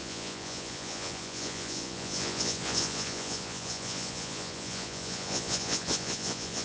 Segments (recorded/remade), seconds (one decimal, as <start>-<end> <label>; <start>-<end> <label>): 0.0-6.6 remade